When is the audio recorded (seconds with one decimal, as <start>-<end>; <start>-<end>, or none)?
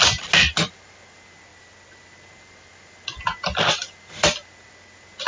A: 0.0-5.3